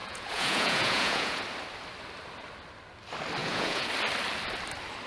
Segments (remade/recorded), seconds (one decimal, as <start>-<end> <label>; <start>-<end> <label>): 0.0-1.4 remade; 1.4-3.4 recorded; 3.4-3.9 remade; 3.9-5.1 recorded